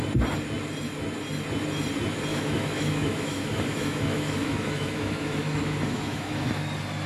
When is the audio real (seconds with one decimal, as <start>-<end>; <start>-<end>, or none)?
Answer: 0.0-2.3; 6.6-7.1